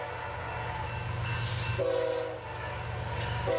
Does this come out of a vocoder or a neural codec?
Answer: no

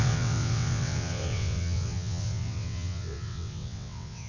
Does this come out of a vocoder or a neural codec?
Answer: yes